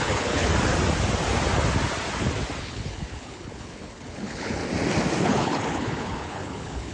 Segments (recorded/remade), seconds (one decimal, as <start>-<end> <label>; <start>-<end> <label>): 0.0-0.5 remade; 0.5-2.6 recorded; 2.6-4.6 remade; 4.6-5.2 recorded; 5.2-6.9 remade